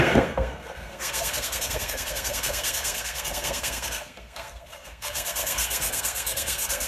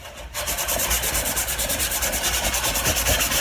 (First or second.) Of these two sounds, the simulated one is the first